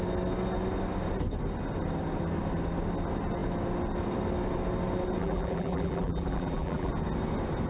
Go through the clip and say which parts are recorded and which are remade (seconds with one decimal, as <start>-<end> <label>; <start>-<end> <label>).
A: 0.0-5.2 recorded; 5.2-6.9 remade; 6.9-7.7 recorded